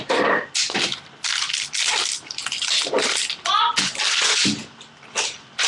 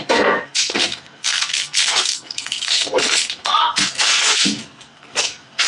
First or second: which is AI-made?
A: second